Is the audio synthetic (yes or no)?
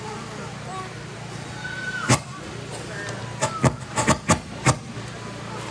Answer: no